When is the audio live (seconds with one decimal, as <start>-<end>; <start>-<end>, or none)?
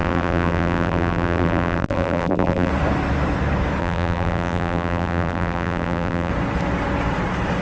2.7-3.8; 6.3-7.6